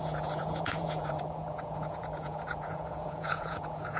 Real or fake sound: fake